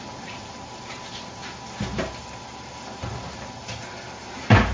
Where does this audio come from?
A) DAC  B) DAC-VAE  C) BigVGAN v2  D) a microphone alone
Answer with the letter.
C